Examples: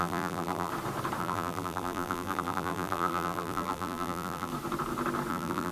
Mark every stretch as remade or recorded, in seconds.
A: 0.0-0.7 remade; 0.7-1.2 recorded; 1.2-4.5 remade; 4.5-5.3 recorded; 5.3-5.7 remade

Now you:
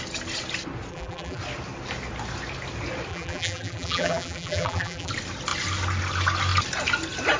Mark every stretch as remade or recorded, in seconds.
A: 0.0-0.9 recorded; 0.9-1.4 remade; 1.4-3.1 recorded; 3.1-5.1 remade; 5.1-7.4 recorded

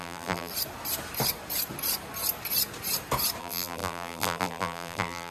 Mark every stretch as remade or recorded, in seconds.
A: 0.0-0.5 remade; 0.5-3.4 recorded; 3.4-5.3 remade

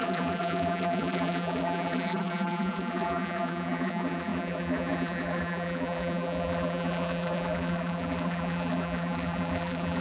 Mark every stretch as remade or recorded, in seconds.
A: 0.0-10.0 remade

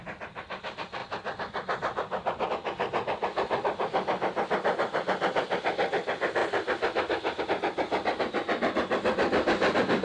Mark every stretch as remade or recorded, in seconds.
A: 0.0-10.0 recorded

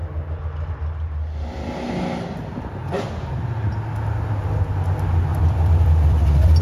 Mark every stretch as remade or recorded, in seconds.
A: 0.0-5.3 recorded; 5.3-6.6 remade